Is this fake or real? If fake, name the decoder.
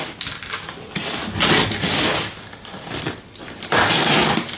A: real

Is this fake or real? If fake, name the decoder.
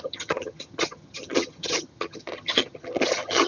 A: fake, vocoder, HiFi-GAN